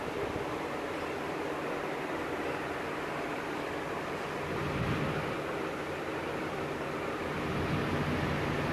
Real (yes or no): yes